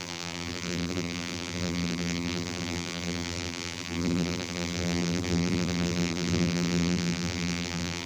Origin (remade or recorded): remade